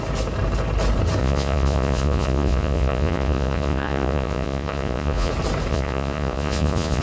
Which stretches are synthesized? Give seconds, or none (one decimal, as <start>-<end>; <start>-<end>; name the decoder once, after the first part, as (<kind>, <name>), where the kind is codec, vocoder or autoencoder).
1.2-5.3 (vocoder, Vocos); 5.7-7.0